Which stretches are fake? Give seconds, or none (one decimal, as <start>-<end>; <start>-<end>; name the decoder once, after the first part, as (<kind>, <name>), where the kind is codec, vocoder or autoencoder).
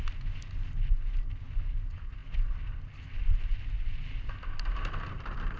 none